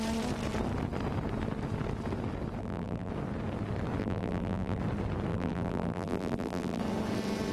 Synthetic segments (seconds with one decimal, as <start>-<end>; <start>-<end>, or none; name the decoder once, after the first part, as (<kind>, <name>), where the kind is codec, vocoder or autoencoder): 2.6-3.1 (vocoder, BigVGAN v2); 4.0-4.8; 5.3-6.8